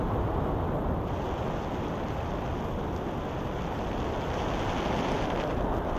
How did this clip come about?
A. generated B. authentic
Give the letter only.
B